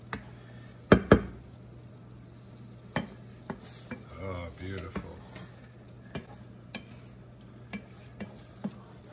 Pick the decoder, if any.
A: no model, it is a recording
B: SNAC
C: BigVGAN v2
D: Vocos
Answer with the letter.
A